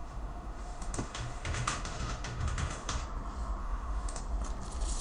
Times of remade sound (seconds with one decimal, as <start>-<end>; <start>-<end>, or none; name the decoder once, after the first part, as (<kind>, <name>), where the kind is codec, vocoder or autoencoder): 0.0-3.0 (autoencoder, DAC-VAE); 3.6-4.2